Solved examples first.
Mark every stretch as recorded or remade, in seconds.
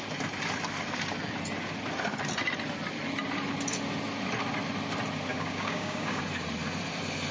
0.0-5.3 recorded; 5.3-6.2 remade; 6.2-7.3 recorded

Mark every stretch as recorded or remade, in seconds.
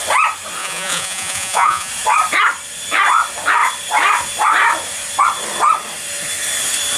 0.0-0.6 recorded; 0.6-1.9 remade; 1.9-7.0 recorded